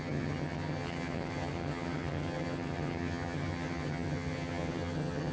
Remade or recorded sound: remade